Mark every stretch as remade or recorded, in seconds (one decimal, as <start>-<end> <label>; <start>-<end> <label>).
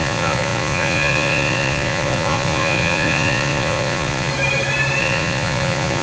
0.0-4.3 remade; 4.3-5.0 recorded; 5.0-6.0 remade